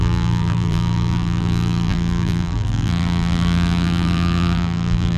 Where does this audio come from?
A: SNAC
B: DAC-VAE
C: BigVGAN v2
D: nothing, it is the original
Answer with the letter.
C